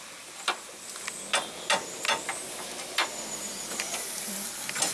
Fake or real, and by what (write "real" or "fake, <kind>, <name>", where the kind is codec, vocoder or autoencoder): real